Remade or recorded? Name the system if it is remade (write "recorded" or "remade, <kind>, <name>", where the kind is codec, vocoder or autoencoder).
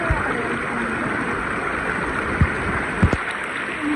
recorded